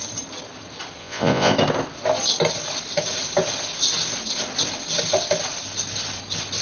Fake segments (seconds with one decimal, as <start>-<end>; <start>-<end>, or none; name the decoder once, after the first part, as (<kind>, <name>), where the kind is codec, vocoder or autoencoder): 1.0-1.5 (vocoder, Vocos)